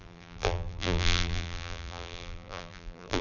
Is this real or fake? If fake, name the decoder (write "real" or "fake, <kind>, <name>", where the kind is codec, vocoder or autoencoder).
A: fake, vocoder, BigVGAN v2